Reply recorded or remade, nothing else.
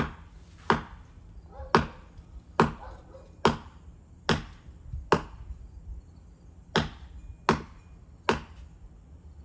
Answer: recorded